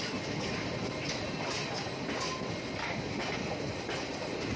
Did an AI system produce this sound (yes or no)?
no